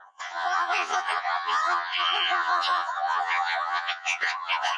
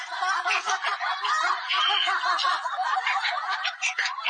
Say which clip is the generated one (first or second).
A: first